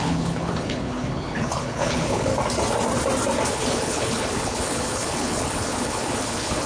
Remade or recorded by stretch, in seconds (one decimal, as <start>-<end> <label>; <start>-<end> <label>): 0.0-2.3 remade; 2.3-3.5 recorded; 3.5-6.7 remade